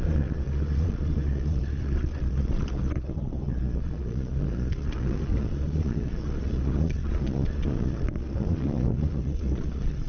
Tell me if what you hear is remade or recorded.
remade